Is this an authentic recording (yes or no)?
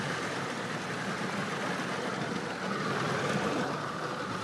no